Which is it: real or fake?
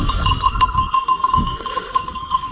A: fake